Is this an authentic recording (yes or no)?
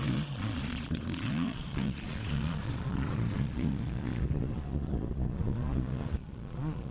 no